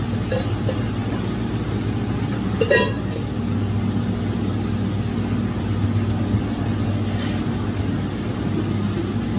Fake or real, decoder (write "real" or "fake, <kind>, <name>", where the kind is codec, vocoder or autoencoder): real